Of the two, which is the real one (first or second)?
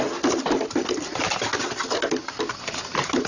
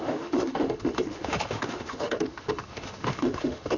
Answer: first